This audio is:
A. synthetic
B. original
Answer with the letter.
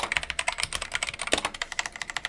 B